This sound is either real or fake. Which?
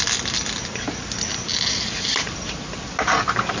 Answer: real